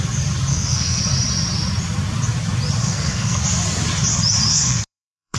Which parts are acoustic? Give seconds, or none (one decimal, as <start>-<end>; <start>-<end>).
0.0-0.5; 1.0-2.8; 3.4-4.5